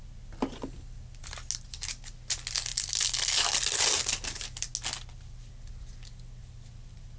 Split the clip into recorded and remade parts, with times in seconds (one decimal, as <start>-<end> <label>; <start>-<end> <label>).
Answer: 0.0-7.2 recorded